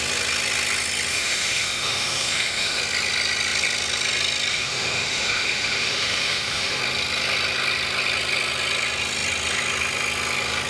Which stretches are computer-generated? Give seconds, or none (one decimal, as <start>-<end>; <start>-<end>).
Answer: 1.1-2.8; 4.5-6.8